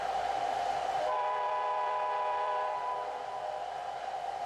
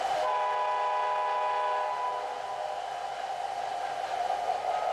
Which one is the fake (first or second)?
first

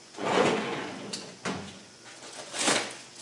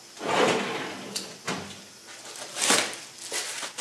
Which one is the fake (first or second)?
first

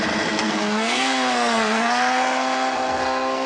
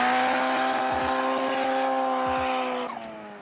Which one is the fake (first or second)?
first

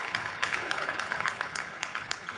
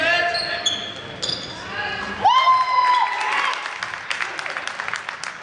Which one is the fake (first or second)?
first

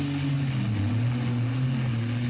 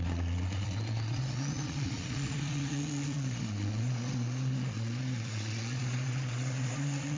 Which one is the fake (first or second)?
second